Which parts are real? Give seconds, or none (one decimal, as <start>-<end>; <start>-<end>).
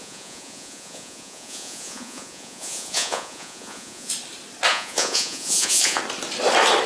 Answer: 4.1-4.7; 6.0-6.9